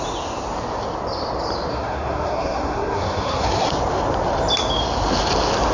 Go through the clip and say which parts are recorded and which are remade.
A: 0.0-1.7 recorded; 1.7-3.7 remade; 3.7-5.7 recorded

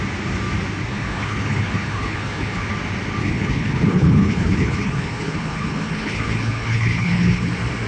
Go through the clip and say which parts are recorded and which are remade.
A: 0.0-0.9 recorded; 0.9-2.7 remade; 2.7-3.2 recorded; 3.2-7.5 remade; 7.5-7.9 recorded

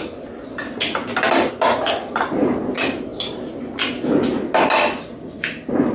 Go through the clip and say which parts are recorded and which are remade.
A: 0.0-5.9 recorded